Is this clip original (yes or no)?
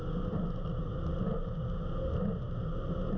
yes